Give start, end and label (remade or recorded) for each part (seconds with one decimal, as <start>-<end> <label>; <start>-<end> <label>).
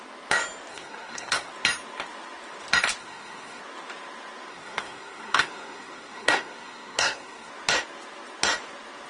0.0-0.7 recorded; 0.7-1.5 remade; 1.5-3.0 recorded; 3.0-3.6 remade; 3.6-4.5 recorded; 4.5-7.5 remade; 7.5-9.1 recorded